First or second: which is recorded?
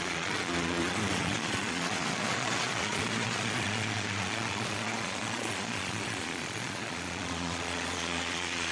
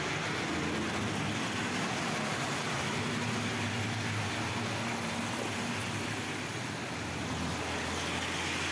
second